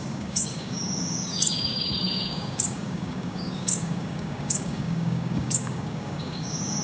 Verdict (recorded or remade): remade